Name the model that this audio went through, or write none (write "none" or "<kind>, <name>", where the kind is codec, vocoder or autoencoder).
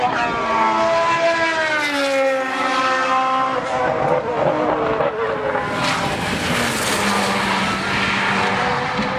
none